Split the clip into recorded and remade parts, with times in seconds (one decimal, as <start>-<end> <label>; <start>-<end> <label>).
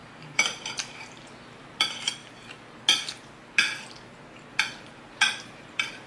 0.0-2.2 remade; 2.2-4.5 recorded; 4.5-6.1 remade